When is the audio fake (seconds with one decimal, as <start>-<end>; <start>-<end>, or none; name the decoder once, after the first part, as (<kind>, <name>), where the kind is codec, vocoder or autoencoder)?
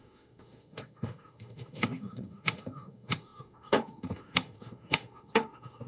0.0-5.9 (autoencoder, DAC-VAE)